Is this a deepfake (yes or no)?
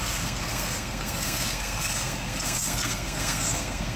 yes